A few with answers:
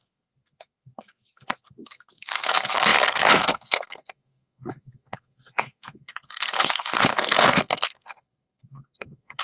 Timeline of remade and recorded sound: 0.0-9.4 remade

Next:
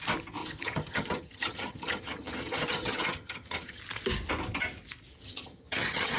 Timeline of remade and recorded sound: 0.0-0.4 recorded; 0.4-3.8 remade; 3.8-5.1 recorded; 5.1-6.2 remade

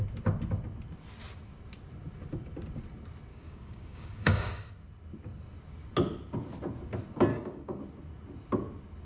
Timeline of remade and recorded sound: 0.0-3.3 recorded; 3.3-4.7 remade; 4.7-7.3 recorded; 7.3-7.8 remade; 7.8-9.1 recorded